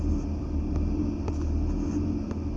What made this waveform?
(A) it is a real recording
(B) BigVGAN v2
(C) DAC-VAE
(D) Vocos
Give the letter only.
A